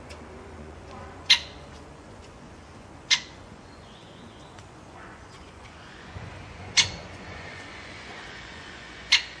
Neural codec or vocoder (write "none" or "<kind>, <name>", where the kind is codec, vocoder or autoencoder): vocoder, Vocos